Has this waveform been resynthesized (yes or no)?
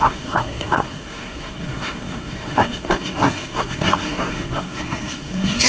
yes